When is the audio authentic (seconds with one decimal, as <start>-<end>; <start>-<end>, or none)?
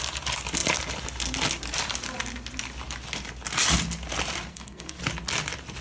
0.0-4.5; 5.0-5.8